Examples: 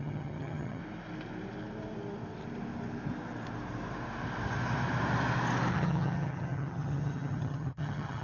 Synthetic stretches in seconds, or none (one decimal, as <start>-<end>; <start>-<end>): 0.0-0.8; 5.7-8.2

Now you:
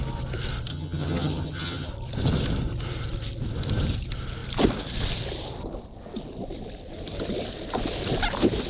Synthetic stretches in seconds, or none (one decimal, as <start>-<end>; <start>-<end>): 0.7-1.9

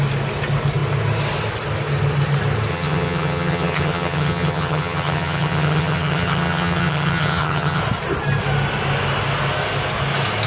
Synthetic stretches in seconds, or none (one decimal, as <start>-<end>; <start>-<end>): 2.7-7.8

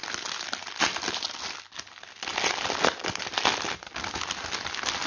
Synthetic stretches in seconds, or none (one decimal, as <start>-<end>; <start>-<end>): none

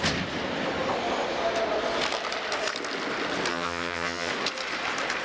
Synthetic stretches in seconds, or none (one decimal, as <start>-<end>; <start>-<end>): 3.5-4.3